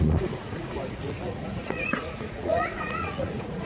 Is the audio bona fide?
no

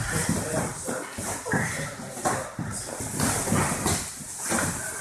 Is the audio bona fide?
yes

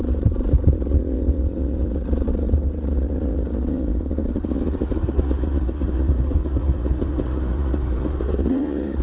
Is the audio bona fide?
no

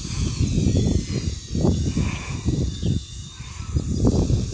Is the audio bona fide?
yes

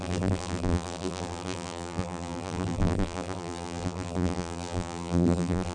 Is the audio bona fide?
no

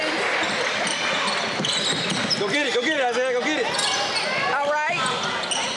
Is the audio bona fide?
yes